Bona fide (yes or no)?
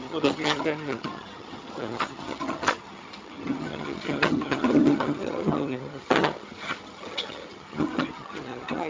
no